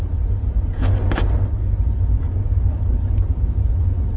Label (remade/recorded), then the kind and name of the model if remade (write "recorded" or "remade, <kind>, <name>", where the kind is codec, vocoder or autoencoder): recorded